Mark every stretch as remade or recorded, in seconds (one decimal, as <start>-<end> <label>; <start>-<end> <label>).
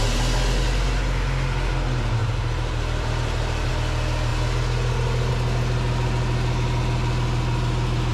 0.0-2.2 recorded; 2.2-3.7 remade; 3.7-8.1 recorded